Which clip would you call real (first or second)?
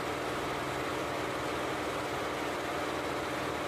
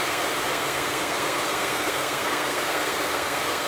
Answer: first